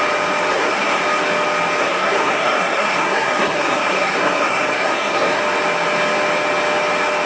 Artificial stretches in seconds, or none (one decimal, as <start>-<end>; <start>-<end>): 0.5-1.0; 1.8-5.4